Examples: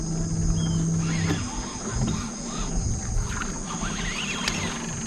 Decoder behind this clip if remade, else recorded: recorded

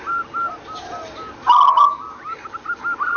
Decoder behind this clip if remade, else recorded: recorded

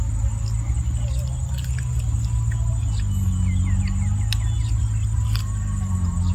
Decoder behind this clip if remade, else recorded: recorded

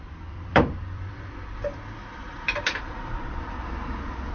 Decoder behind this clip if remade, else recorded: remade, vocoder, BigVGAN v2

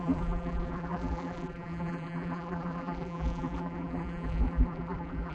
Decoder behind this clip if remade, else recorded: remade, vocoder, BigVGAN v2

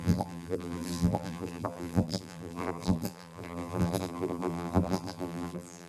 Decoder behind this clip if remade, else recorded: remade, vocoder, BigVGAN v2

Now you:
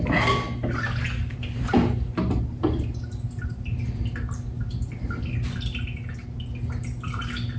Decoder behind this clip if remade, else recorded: recorded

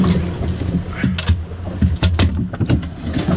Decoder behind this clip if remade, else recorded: recorded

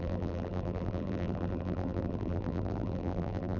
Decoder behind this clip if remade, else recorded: remade, vocoder, BigVGAN v2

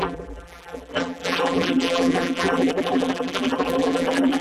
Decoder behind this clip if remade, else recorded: remade, vocoder, BigVGAN v2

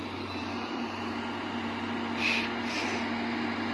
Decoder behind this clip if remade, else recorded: recorded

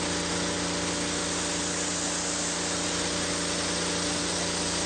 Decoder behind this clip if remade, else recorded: recorded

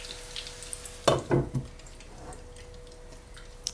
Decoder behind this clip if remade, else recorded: recorded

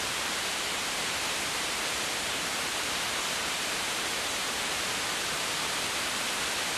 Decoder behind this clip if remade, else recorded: remade, vocoder, BigVGAN v2